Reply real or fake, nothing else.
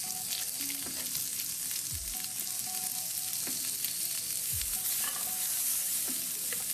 real